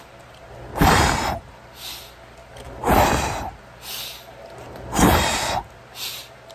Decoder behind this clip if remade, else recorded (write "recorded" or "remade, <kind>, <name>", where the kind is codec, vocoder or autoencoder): recorded